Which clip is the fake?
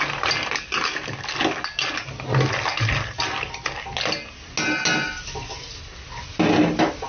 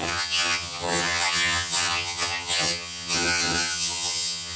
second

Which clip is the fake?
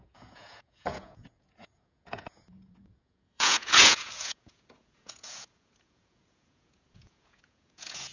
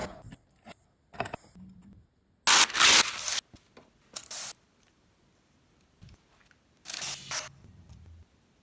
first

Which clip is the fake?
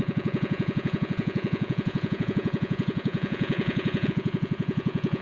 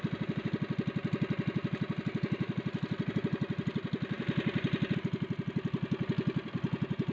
first